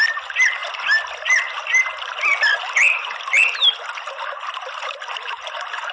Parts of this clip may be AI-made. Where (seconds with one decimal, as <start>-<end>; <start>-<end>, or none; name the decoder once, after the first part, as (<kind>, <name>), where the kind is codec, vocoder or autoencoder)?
none